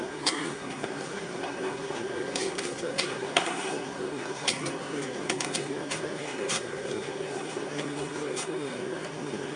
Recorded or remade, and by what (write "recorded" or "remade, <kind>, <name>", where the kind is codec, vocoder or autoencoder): remade, codec, SNAC